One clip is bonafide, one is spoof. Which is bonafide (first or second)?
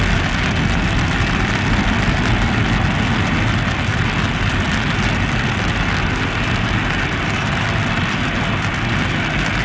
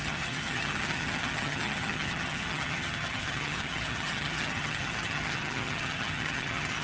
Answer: first